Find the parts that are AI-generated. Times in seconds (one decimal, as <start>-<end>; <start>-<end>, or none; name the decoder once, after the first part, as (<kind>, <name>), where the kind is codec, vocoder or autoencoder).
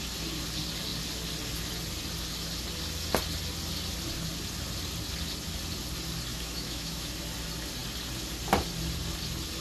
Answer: 6.3-7.1 (autoencoder, DAC-VAE)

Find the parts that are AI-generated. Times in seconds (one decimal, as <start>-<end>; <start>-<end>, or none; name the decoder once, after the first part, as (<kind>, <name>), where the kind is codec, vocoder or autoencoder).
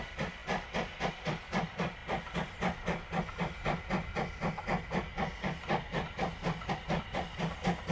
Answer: 0.0-2.0 (vocoder, BigVGAN v2); 6.7-7.9